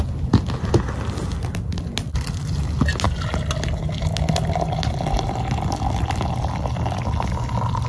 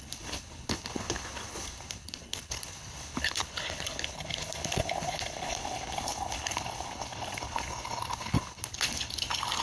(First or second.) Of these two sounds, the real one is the first